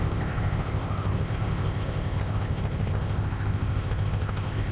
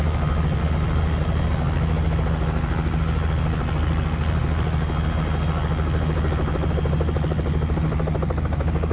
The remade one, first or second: first